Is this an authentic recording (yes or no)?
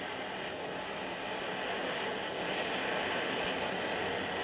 yes